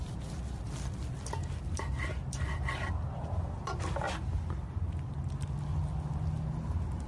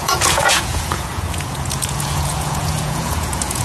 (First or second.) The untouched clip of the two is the first